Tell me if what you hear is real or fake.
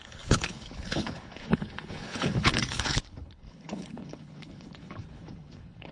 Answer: fake